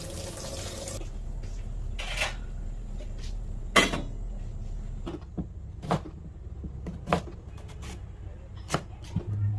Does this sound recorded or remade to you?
recorded